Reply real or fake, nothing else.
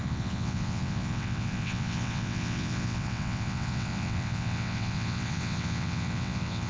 fake